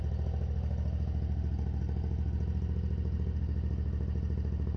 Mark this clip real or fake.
real